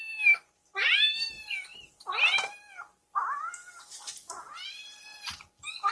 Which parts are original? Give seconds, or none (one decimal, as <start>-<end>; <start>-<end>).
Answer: 0.0-5.9

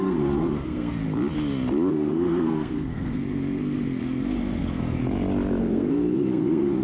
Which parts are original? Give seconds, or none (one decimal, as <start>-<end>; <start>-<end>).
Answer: 1.0-1.9; 5.0-5.6

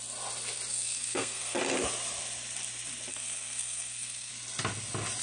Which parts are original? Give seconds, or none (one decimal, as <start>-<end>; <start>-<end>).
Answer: 0.0-0.7; 1.6-3.1; 4.3-5.2